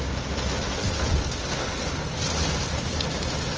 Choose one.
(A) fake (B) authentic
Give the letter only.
B